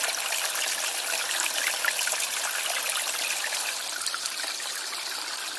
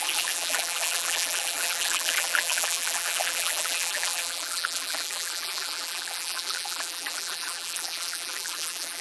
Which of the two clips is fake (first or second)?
second